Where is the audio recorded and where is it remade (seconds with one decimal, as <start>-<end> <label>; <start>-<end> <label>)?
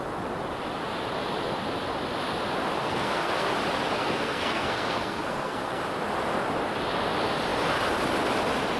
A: 0.0-2.8 recorded; 2.8-3.5 remade; 3.5-4.0 recorded; 4.0-5.8 remade; 5.8-8.8 recorded